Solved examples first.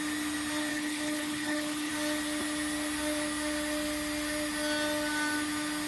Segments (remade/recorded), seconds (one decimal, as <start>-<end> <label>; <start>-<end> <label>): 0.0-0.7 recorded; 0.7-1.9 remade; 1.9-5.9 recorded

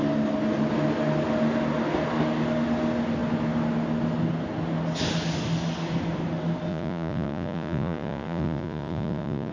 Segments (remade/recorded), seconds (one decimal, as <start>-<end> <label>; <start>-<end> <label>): 0.0-6.7 recorded; 6.7-9.5 remade

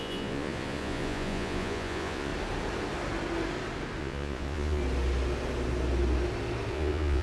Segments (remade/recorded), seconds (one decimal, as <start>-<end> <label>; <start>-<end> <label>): 0.0-2.3 remade; 2.3-4.0 recorded; 4.0-4.8 remade; 4.8-6.7 recorded; 6.7-7.2 remade